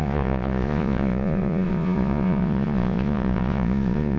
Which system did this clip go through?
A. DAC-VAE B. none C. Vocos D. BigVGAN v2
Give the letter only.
C